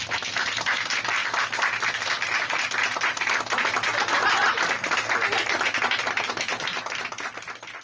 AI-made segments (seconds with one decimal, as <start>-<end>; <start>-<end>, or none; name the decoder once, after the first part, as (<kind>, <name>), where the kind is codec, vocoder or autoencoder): none